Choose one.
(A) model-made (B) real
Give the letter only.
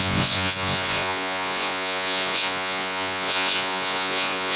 A